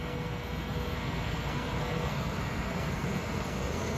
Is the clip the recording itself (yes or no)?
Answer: no